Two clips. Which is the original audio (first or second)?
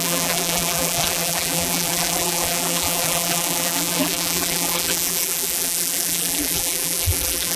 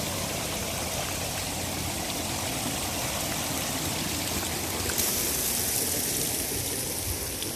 second